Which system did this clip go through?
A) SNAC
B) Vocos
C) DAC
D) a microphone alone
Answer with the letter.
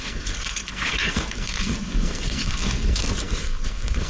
A